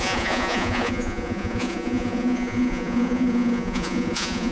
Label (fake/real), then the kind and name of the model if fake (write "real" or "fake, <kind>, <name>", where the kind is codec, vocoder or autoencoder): fake, vocoder, Vocos